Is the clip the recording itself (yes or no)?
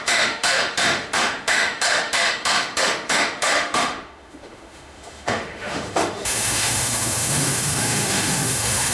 no